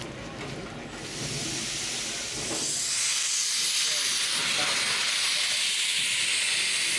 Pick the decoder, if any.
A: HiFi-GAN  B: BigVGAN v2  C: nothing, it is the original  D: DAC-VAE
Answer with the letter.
C